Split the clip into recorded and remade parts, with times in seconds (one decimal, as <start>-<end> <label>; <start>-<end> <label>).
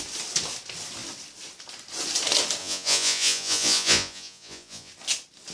0.0-2.6 recorded; 2.6-4.9 remade; 4.9-5.5 recorded